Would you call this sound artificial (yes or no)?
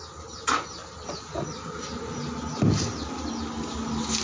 no